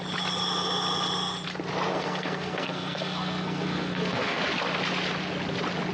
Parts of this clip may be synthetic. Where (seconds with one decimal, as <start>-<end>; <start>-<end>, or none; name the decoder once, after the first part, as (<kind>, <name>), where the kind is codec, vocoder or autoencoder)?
1.9-4.4 (codec, SNAC)